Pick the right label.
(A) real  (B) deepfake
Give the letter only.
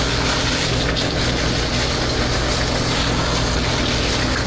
A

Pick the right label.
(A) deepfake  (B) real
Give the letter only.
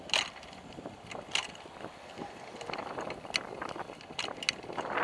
B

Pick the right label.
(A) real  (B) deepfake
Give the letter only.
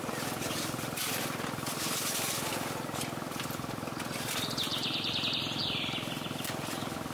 A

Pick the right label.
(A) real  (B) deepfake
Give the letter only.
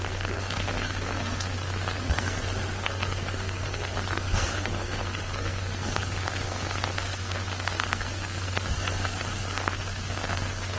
B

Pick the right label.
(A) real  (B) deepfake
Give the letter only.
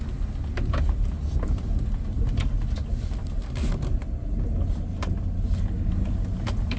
A